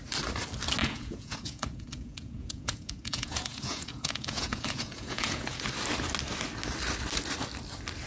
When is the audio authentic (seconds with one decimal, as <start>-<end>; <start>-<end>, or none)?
0.0-0.8; 5.6-8.1